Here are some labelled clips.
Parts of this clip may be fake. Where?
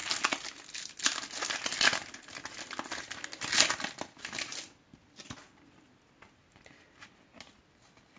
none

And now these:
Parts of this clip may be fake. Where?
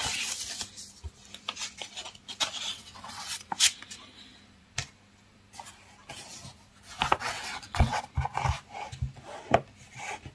2.7-3.5 (vocoder, WaveNeXt); 7.2-8.0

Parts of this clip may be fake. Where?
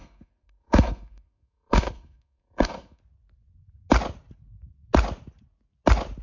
0.0-3.0 (codec, SNAC)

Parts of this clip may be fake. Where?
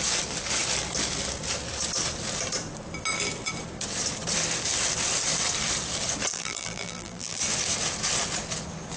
6.3-7.4 (vocoder, BigVGAN v2)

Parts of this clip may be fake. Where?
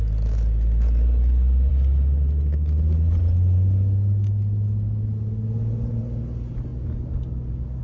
none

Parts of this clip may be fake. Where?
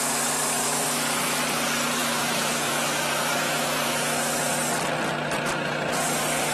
0.6-1.4 (autoencoder, DAC-VAE); 2.0-4.5